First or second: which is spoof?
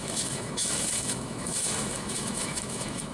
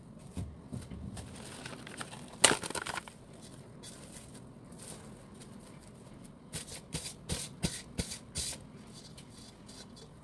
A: first